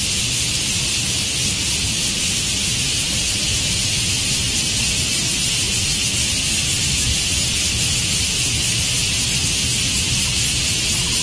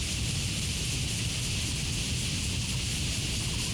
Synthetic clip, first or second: second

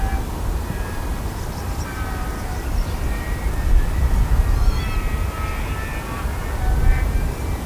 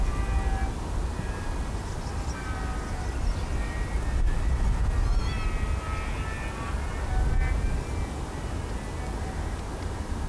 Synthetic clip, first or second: first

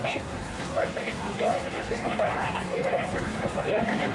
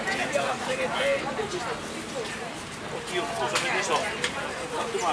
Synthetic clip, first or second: first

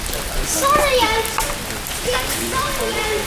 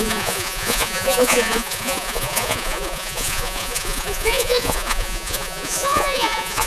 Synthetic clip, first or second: second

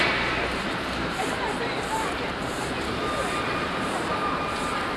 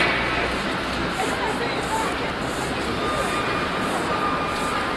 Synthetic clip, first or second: first